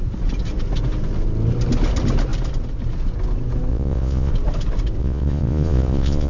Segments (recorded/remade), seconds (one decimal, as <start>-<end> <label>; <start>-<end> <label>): 0.0-3.7 recorded; 3.7-4.3 remade; 4.3-5.0 recorded; 5.0-6.3 remade